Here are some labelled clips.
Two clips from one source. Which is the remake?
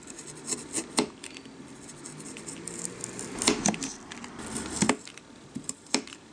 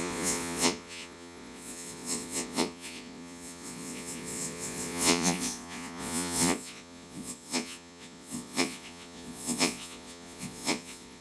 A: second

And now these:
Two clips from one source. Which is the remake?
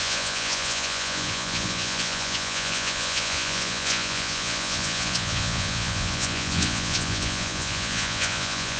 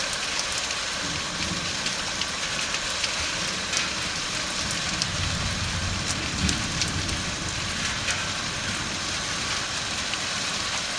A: first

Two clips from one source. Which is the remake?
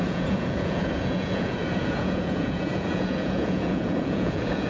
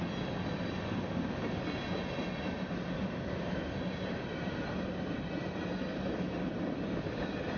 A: first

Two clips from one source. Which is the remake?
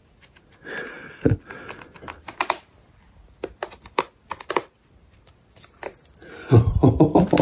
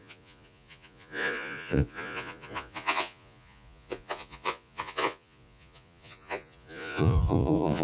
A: second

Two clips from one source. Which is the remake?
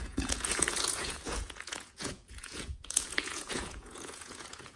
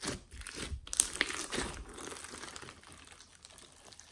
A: first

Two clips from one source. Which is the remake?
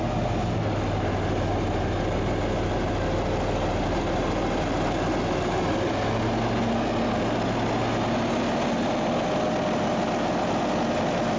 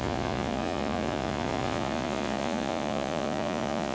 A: second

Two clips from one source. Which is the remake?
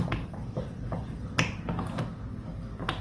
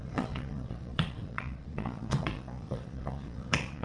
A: second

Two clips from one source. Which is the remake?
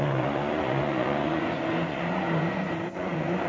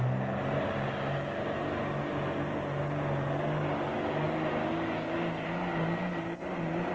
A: first